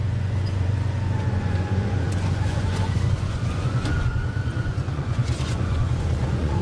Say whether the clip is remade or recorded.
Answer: remade